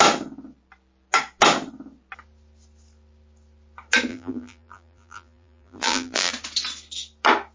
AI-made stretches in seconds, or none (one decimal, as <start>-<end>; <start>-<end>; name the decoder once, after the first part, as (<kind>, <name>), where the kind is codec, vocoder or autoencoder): 4.1-6.3 (vocoder, BigVGAN v2)